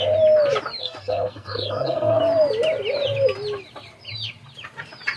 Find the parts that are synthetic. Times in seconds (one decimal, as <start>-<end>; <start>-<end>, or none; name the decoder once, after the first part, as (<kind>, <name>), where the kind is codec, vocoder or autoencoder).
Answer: 0.8-2.2 (codec, SNAC)